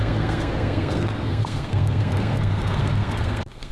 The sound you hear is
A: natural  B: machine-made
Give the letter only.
B